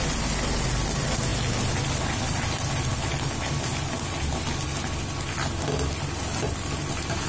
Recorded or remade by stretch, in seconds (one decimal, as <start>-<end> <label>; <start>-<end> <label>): 0.0-7.3 recorded